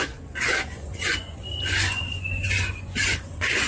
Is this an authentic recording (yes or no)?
no